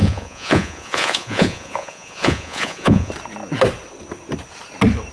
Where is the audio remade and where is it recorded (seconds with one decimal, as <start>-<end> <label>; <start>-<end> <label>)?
0.0-3.1 remade; 3.1-5.1 recorded